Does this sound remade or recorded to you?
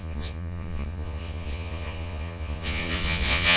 remade